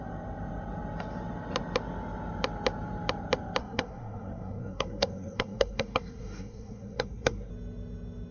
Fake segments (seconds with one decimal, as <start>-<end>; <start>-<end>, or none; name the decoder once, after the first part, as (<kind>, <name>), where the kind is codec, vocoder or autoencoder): 3.6-7.5 (codec, SNAC)